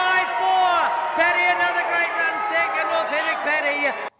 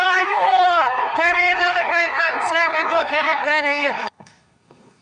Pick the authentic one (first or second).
first